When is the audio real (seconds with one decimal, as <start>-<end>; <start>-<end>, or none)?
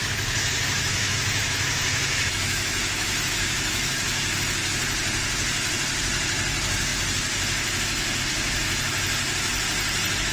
4.3-10.3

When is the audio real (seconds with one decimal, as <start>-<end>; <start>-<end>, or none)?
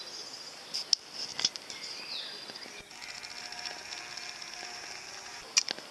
0.0-5.9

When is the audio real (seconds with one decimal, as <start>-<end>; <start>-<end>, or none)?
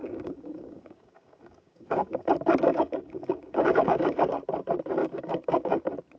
2.3-2.7; 4.3-5.0; 5.8-6.2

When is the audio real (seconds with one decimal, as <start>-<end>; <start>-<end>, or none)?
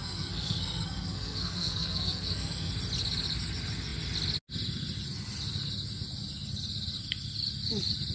2.7-8.1